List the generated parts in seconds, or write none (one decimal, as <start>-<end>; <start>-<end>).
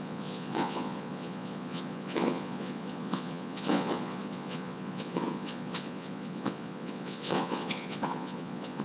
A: 0.0-8.8